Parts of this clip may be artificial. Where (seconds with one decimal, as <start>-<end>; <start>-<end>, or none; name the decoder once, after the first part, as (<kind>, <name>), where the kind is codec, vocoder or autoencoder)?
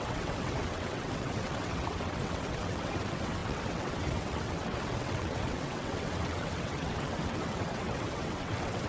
0.0-8.9 (vocoder, WaveNeXt)